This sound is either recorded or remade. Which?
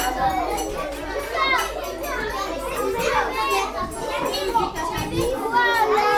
recorded